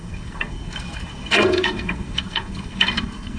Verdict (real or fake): fake